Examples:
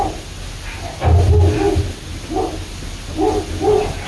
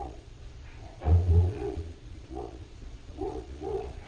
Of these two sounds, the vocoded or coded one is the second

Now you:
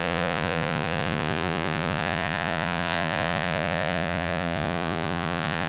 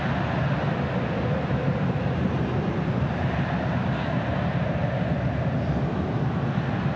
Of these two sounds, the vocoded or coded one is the first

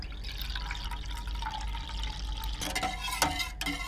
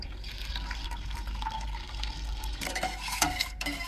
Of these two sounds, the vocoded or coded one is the second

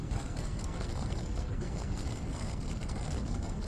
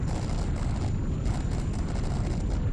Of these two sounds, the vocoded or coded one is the first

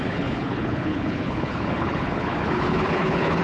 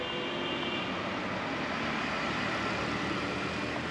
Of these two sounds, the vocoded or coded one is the first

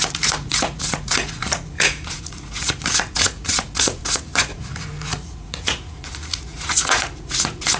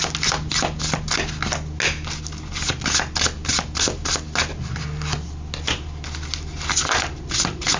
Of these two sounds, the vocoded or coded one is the first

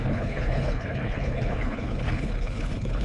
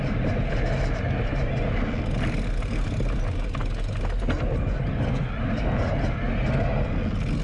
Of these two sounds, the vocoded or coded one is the first